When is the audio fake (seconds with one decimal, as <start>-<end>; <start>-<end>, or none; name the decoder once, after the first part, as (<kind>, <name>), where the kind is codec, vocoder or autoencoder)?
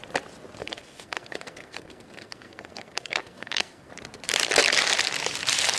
0.6-3.9 (codec, SNAC)